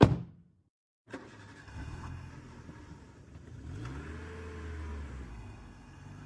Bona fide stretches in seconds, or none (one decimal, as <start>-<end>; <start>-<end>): 0.0-1.6; 2.3-5.3